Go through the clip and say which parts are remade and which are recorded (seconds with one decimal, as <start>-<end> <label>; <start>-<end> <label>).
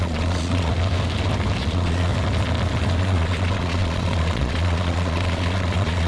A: 0.0-0.7 remade; 0.7-1.6 recorded; 1.6-2.1 remade; 2.1-3.0 recorded; 3.0-6.1 remade